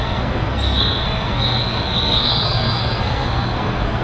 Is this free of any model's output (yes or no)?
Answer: no